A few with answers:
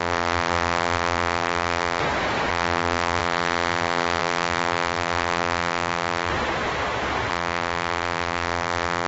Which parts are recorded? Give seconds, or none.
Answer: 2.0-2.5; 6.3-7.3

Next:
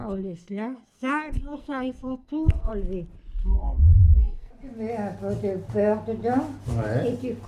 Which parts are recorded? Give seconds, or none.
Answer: 2.7-3.4; 4.5-7.5

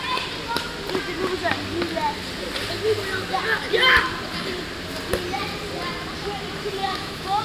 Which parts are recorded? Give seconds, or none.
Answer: 0.0-6.8